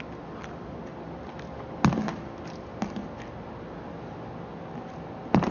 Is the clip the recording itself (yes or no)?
yes